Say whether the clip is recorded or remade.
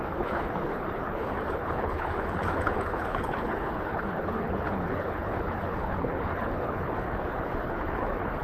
remade